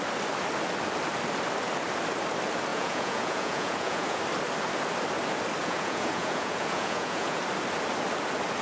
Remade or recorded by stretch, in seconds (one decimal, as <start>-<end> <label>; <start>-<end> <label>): 0.0-2.7 recorded; 2.7-4.2 remade; 4.2-5.6 recorded; 5.6-7.4 remade; 7.4-8.6 recorded